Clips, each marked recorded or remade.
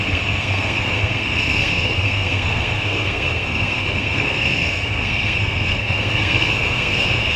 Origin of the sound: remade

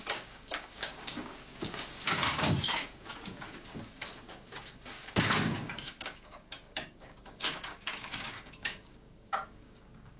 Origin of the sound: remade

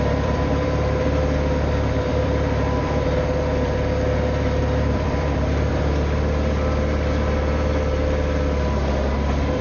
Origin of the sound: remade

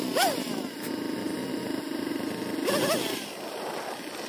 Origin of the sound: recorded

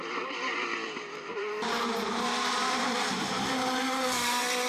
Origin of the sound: remade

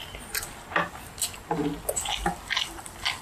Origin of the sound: recorded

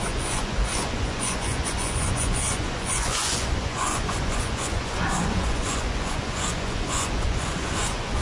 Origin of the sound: remade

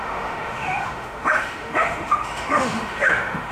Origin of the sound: remade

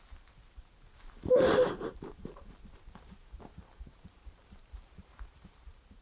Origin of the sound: remade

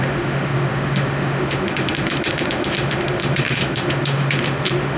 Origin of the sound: remade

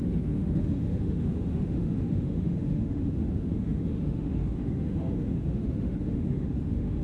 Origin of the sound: remade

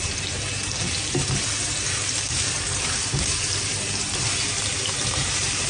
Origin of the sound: remade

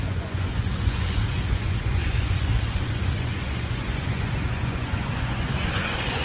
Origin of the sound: remade